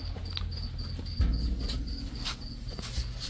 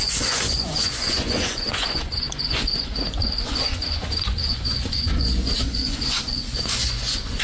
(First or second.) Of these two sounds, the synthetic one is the second